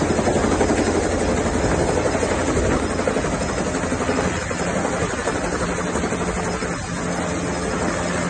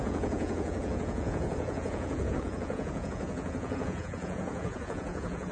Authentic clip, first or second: first